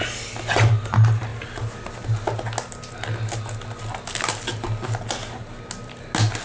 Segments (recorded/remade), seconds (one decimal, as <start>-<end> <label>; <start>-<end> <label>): 0.0-6.4 recorded